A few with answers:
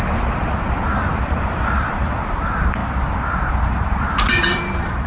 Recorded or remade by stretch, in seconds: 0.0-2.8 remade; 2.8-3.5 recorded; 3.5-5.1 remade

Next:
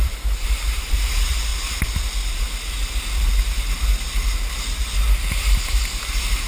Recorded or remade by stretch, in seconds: 0.0-1.5 remade; 1.5-5.4 recorded; 5.4-6.5 remade